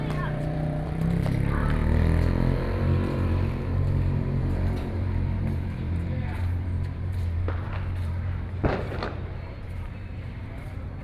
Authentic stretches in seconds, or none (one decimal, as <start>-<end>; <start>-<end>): 1.8-2.3